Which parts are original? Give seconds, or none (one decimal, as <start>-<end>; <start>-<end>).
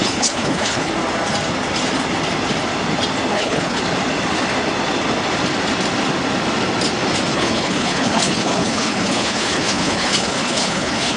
0.9-3.3; 3.8-7.3